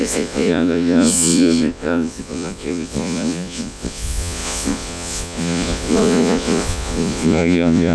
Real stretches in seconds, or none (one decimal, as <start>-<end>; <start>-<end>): none